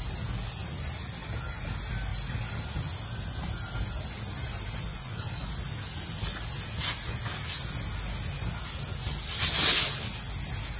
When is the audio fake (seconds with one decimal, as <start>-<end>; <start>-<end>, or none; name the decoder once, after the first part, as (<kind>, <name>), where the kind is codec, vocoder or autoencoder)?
4.9-5.5 (vocoder, Vocos)

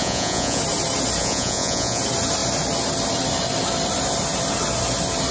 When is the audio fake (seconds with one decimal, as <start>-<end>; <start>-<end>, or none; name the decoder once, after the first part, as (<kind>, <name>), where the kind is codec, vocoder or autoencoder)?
0.0-0.6 (vocoder, Vocos); 1.2-2.0